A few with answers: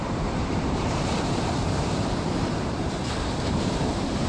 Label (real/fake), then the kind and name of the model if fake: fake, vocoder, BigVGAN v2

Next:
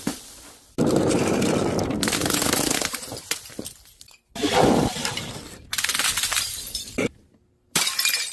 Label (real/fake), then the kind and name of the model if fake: fake, vocoder, BigVGAN v2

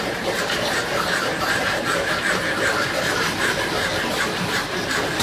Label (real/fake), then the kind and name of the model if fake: fake, vocoder, BigVGAN v2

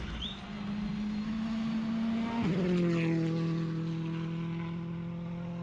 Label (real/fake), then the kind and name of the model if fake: real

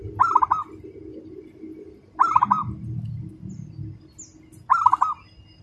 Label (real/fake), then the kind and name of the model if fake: real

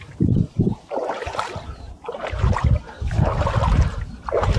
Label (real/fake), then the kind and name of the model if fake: fake, vocoder, BigVGAN v2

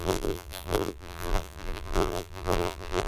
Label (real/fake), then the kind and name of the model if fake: fake, vocoder, BigVGAN v2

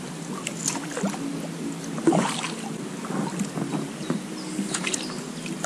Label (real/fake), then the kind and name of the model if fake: real